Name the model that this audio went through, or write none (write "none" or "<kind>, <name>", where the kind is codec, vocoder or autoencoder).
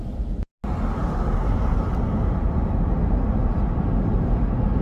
none